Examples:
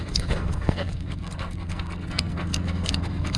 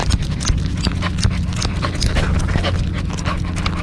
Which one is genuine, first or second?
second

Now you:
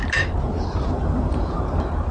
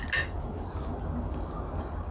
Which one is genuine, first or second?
second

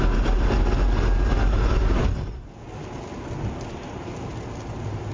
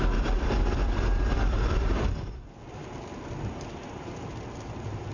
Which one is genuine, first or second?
first